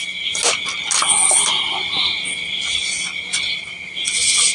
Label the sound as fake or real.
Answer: real